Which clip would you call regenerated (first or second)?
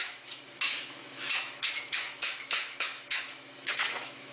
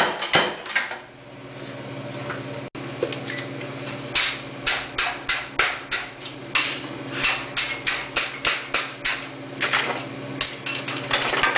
first